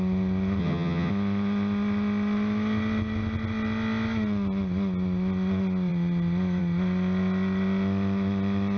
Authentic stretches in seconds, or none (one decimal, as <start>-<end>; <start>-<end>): 0.0-0.6; 1.1-8.8

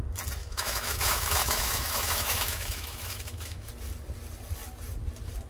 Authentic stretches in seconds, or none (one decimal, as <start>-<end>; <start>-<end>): 0.0-0.4; 3.7-5.5

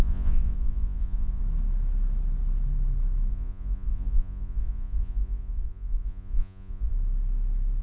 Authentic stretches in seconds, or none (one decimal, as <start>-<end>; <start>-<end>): 1.4-3.3; 6.9-7.8

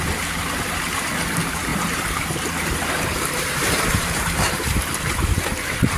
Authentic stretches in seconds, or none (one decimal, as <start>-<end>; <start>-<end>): none